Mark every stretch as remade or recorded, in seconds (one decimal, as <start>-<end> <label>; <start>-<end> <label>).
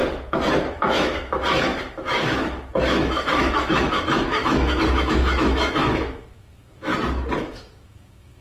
0.0-0.7 recorded; 0.7-6.9 remade; 6.9-7.4 recorded; 7.4-8.4 remade